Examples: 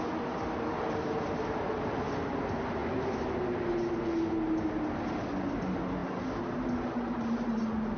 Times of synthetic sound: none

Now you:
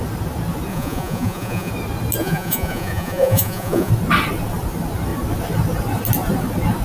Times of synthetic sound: 0.7-1.7 (vocoder, Vocos); 2.2-3.9

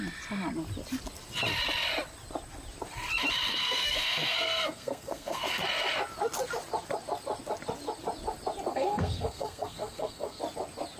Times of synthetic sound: 3.5-5.6 (codec, SNAC); 8.7-10.4

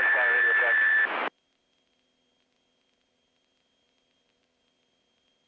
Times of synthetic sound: none

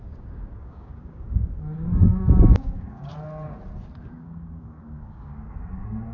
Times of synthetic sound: 0.0-3.1 (codec, DAC); 4.1-6.1

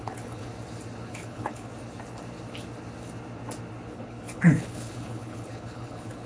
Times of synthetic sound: 0.0-0.5 (codec, HILCodec); 1.1-1.7; 3.9-6.3

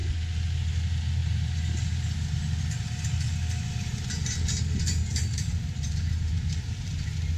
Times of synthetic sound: 5.1-7.0 (vocoder, BigVGAN v2)

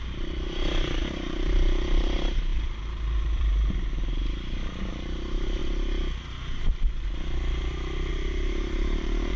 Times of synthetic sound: 0.0-5.6 (vocoder, BigVGAN v2); 8.1-9.4